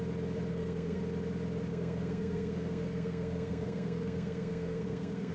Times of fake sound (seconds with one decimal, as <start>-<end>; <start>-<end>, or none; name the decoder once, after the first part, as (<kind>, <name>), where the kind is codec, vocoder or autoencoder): 0.5-1.0 (codec, SNAC); 1.7-5.3